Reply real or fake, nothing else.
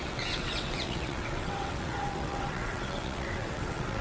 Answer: fake